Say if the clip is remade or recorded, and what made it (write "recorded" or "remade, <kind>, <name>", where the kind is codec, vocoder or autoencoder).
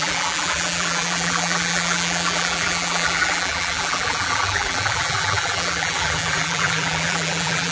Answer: remade, vocoder, BigVGAN v2